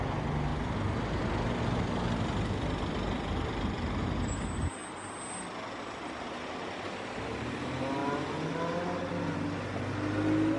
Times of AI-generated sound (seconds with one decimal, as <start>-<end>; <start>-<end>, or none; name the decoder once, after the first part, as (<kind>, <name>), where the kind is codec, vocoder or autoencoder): none